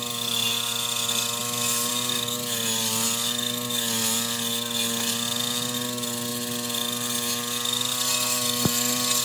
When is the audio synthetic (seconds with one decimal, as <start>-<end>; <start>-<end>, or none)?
none